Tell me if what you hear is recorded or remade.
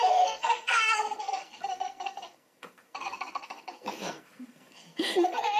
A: remade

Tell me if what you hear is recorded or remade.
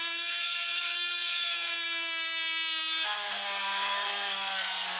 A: remade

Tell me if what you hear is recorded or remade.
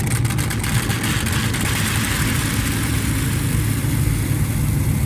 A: recorded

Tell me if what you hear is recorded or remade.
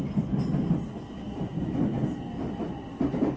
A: recorded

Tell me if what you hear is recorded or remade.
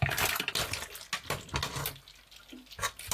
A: recorded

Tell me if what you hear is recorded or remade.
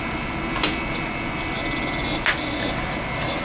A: recorded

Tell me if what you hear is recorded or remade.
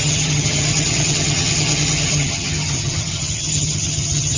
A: remade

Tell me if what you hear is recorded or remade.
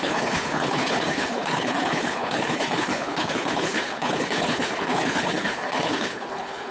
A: remade